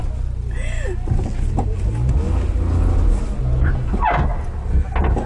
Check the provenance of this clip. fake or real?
real